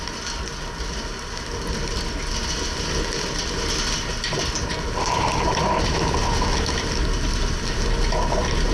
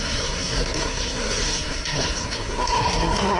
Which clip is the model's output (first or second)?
second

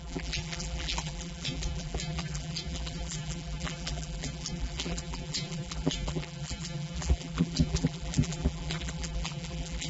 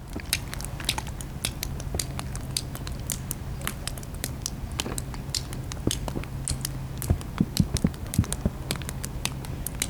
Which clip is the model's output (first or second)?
first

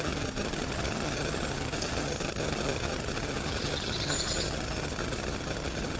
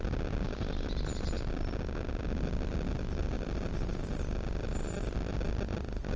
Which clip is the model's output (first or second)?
first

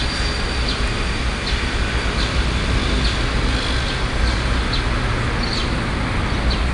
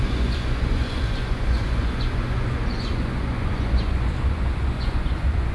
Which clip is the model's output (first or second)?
second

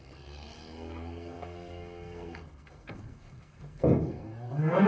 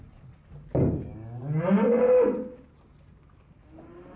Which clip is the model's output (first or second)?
first